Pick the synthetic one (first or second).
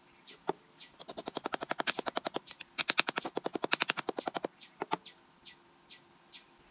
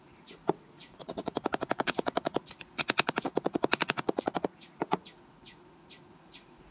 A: second